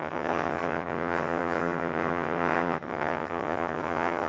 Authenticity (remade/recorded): remade